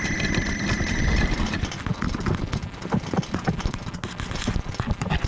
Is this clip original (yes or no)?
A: yes